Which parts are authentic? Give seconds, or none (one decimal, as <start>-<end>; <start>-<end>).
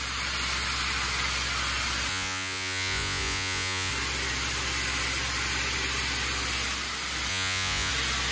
0.0-2.1; 3.9-7.3; 7.9-8.3